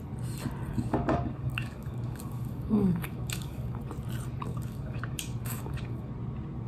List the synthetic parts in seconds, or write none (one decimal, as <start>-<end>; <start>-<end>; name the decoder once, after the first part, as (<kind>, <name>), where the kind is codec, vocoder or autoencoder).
0.7-3.8 (codec, DAC); 4.5-6.1

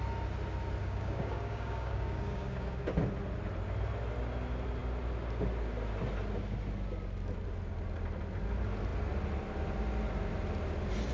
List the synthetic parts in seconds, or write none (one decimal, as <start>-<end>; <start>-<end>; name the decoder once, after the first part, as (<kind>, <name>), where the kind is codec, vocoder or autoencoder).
0.8-2.8 (codec, DAC)